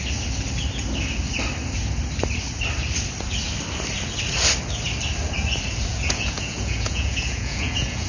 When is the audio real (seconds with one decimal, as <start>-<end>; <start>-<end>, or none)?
0.0-5.9